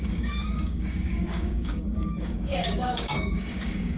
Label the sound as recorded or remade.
remade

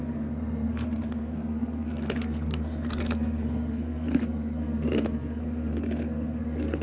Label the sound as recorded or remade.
remade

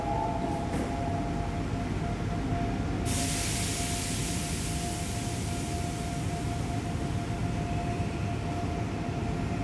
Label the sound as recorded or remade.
recorded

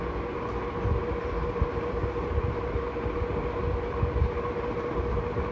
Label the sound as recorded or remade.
recorded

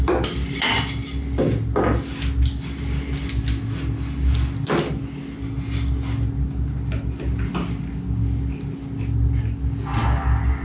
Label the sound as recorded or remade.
recorded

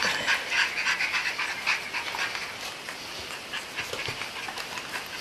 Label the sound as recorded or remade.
recorded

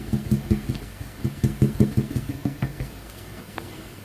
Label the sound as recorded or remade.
remade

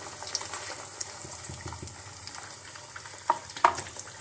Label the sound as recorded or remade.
recorded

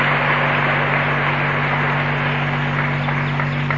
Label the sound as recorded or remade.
recorded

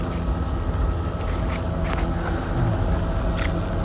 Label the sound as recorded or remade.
recorded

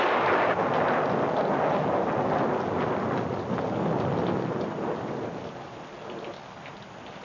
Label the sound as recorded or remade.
recorded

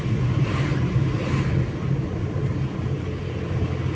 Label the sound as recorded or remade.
recorded